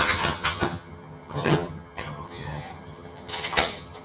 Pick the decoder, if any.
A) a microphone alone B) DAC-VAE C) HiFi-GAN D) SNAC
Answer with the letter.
C